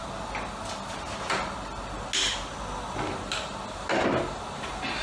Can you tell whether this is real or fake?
real